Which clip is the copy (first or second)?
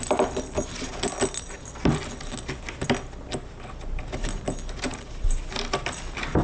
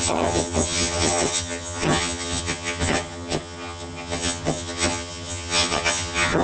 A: second